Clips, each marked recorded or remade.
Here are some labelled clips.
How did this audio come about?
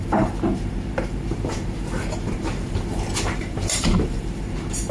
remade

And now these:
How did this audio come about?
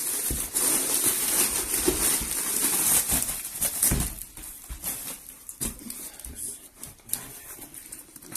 remade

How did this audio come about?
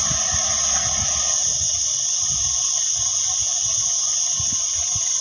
recorded